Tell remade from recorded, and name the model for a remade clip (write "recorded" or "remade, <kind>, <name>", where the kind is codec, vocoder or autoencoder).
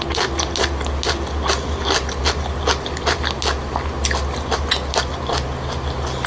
recorded